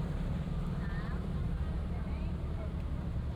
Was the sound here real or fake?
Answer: fake